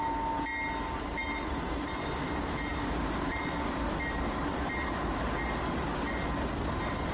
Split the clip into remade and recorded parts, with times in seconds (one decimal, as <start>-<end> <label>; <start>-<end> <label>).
0.0-7.1 recorded